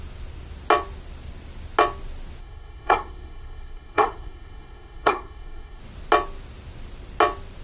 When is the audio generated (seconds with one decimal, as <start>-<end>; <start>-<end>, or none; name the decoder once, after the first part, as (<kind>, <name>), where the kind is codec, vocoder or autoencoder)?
2.4-5.8 (codec, SNAC)